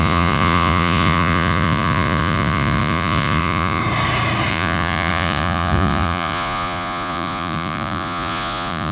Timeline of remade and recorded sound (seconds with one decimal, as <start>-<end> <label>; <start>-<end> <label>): 0.0-3.8 remade; 3.8-4.5 recorded; 4.5-8.9 remade